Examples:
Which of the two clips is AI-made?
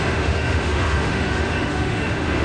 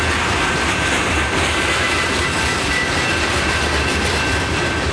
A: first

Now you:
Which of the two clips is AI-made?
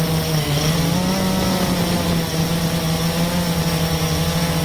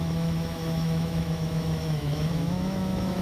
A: second